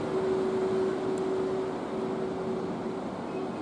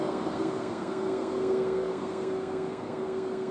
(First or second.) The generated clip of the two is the second